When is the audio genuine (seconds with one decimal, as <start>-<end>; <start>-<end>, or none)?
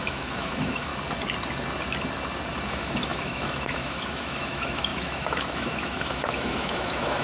0.9-2.7